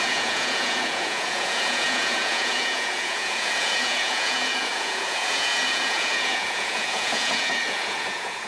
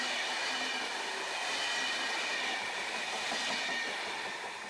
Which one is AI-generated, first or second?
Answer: first